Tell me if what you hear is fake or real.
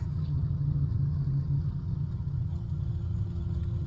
fake